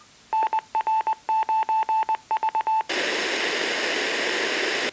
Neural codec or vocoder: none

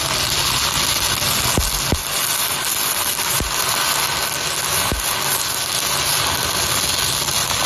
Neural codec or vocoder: none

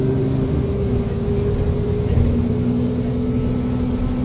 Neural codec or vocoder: none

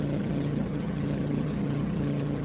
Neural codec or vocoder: vocoder, HiFi-GAN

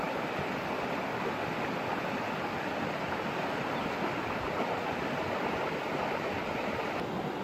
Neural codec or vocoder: none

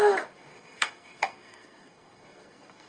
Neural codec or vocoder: codec, SNAC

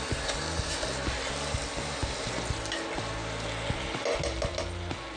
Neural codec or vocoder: none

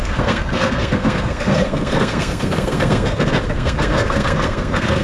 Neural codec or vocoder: codec, SNAC